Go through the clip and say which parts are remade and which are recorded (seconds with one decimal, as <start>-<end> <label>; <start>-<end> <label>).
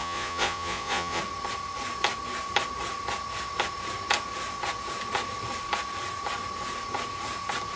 0.0-1.2 remade; 1.2-7.8 recorded